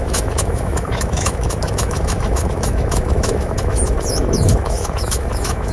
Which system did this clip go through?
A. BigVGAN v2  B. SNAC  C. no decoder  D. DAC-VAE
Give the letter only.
D